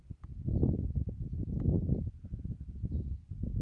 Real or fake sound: real